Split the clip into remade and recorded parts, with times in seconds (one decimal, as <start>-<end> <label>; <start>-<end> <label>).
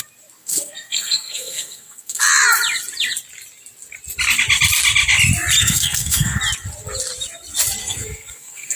0.0-0.4 recorded; 0.4-2.2 remade; 2.2-5.6 recorded; 5.6-6.4 remade; 6.4-7.8 recorded; 7.8-8.8 remade